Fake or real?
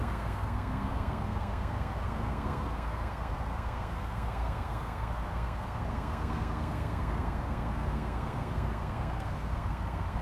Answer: fake